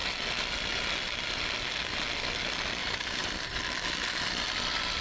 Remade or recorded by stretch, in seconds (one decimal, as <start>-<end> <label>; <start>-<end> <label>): 0.0-2.8 recorded; 2.8-3.6 remade; 3.6-5.0 recorded